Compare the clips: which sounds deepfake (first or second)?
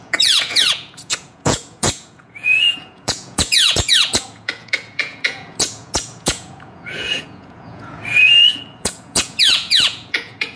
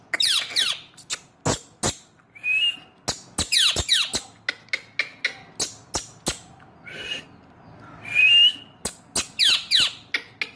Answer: first